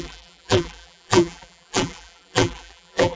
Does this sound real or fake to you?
fake